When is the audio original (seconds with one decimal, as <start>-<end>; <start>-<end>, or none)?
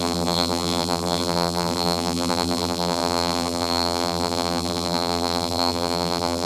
none